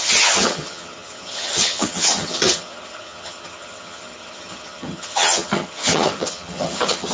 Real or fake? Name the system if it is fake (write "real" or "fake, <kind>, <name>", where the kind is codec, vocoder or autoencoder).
fake, vocoder, HiFi-GAN